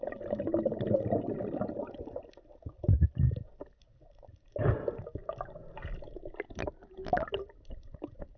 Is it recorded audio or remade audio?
recorded